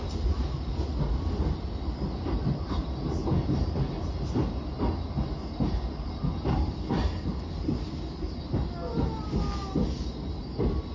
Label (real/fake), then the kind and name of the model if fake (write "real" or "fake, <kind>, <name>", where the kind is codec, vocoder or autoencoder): real